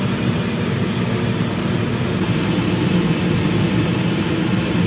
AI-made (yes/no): no